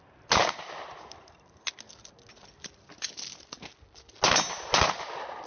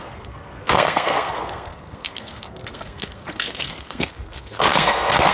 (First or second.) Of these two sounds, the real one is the first